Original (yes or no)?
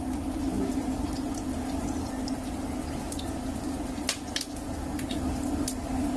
yes